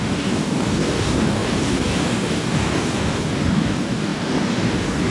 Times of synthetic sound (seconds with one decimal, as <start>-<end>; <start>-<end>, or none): 0.0-5.1